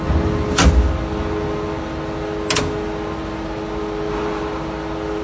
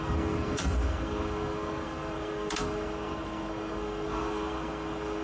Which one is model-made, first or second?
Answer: second